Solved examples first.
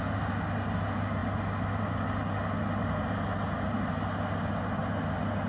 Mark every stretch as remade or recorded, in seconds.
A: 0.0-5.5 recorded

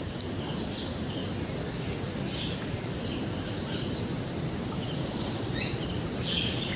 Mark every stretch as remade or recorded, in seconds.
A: 0.0-1.2 remade; 1.2-2.4 recorded; 2.4-6.8 remade

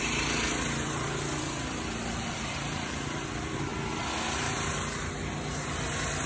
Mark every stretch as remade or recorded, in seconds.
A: 0.0-3.7 remade; 3.7-6.3 recorded

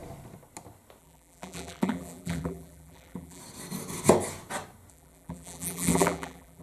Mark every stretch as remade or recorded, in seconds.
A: 0.0-1.0 recorded; 1.0-3.4 remade; 3.4-4.9 recorded; 4.9-6.6 remade

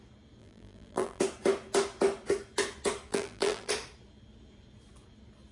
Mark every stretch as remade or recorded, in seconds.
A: 0.0-0.4 recorded; 0.4-1.2 remade; 1.2-3.1 recorded; 3.1-3.7 remade; 3.7-5.5 recorded

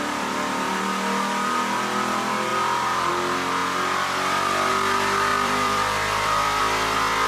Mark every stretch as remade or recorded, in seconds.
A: 0.0-2.5 recorded; 2.5-3.1 remade; 3.1-5.3 recorded; 5.3-6.6 remade; 6.6-7.3 recorded

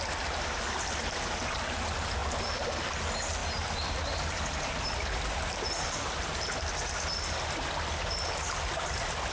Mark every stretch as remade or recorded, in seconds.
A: 0.0-9.3 recorded

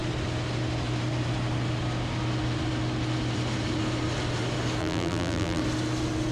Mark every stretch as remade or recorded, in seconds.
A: 0.0-4.8 recorded; 4.8-5.6 remade; 5.6-6.3 recorded